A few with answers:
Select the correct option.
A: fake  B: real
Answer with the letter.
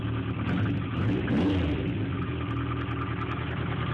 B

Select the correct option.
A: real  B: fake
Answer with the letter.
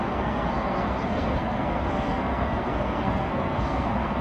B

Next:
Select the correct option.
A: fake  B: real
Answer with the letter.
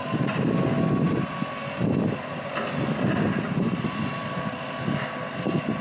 B